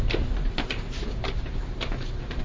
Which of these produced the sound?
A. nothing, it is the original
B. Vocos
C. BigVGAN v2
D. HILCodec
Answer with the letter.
C